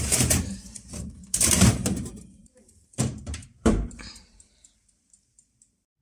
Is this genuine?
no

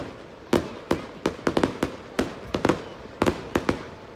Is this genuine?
yes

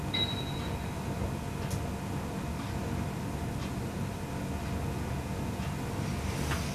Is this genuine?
yes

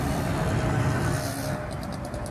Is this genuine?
yes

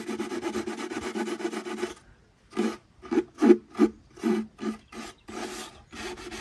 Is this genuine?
yes